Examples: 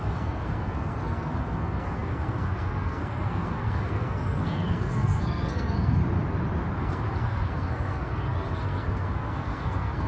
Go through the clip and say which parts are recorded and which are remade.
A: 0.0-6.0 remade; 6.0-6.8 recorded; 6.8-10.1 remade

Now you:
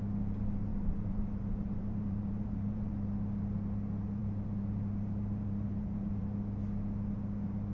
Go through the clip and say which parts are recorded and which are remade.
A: 0.0-0.7 recorded; 0.7-2.9 remade; 2.9-4.2 recorded; 4.2-6.1 remade; 6.1-7.7 recorded

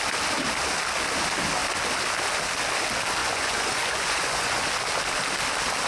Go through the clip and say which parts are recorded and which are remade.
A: 0.0-3.2 recorded; 3.2-4.7 remade; 4.7-5.9 recorded